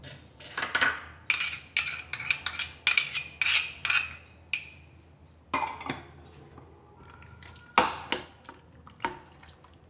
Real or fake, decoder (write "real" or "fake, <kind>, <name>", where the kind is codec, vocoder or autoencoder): real